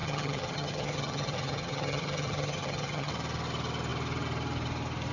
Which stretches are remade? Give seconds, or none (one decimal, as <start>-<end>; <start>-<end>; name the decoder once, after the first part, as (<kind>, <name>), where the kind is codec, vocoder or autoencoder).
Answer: 0.0-3.1 (vocoder, HiFi-GAN)